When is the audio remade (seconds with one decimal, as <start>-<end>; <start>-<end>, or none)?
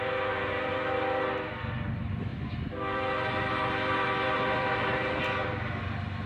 none